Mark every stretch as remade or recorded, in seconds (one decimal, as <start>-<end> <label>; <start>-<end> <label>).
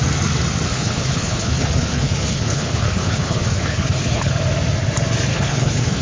0.0-0.7 recorded; 0.7-4.3 remade; 4.3-5.3 recorded; 5.3-6.0 remade